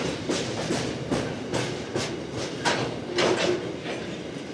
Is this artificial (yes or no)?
no